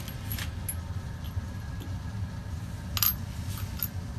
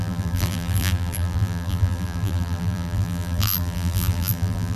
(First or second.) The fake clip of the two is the second